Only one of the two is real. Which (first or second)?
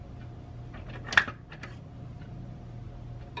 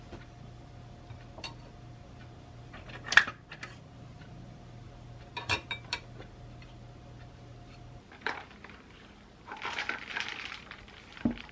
first